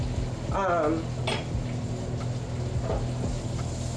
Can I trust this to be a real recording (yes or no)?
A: yes